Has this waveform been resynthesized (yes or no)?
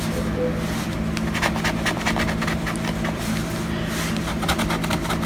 no